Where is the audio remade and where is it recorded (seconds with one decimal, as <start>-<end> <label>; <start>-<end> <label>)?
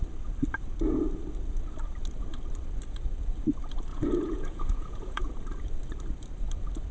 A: 0.0-3.9 recorded; 3.9-5.3 remade; 5.3-6.9 recorded